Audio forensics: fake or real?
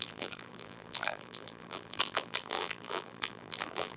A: fake